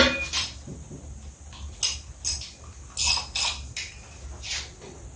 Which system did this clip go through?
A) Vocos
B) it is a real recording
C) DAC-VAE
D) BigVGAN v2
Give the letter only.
B